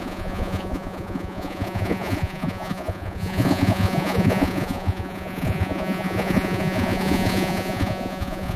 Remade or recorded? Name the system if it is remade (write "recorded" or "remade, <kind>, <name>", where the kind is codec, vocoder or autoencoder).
remade, vocoder, Vocos